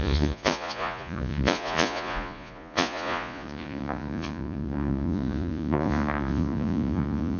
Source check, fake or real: fake